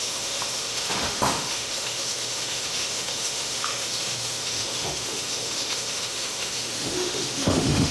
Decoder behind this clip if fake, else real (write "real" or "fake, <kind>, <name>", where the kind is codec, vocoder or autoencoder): fake, autoencoder, DAC-VAE